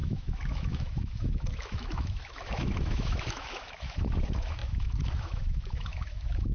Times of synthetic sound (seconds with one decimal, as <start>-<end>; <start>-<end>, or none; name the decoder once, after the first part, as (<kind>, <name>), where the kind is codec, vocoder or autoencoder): 0.0-6.5 (autoencoder, DAC-VAE)